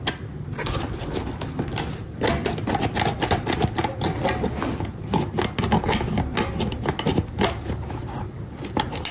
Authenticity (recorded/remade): recorded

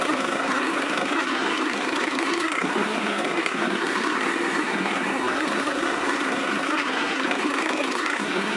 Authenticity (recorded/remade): remade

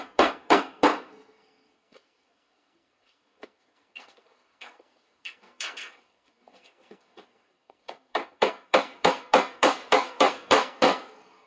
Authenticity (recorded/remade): remade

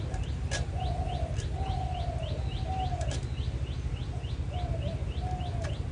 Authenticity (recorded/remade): recorded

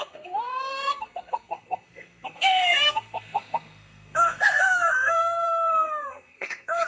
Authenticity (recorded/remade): remade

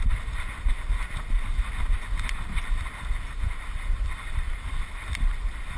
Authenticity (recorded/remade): recorded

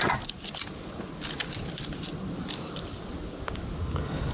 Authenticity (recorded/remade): recorded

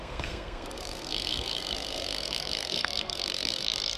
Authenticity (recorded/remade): remade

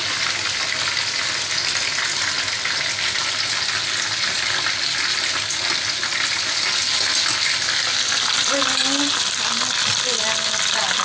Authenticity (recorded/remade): recorded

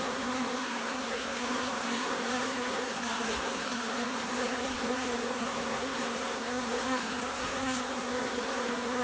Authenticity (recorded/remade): remade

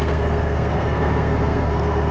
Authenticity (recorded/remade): remade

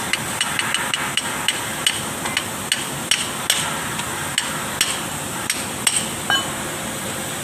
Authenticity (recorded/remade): recorded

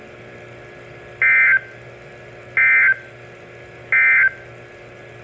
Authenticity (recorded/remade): recorded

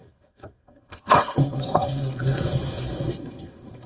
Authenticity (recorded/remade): remade